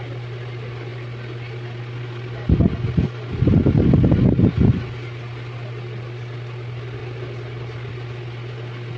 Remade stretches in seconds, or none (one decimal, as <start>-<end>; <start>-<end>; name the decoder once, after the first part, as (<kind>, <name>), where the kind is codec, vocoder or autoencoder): none